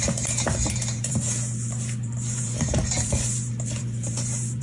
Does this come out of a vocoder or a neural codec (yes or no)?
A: yes